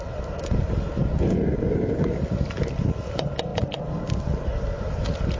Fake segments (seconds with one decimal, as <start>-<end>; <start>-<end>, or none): none